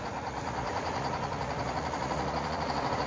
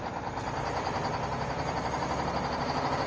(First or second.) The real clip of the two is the second